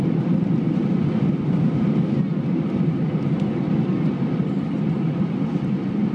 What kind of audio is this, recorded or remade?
recorded